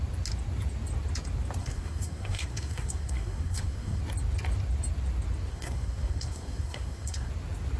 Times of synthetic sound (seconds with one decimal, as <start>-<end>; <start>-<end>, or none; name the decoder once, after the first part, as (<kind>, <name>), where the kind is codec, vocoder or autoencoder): 1.6-4.0 (codec, SNAC); 5.5-7.3